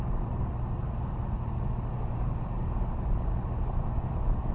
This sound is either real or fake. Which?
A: real